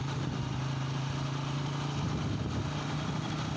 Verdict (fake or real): real